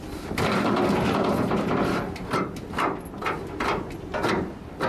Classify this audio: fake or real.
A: real